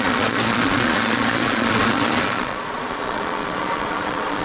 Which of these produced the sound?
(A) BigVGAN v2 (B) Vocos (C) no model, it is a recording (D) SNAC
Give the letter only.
B